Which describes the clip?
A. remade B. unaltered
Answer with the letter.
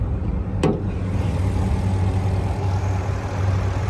B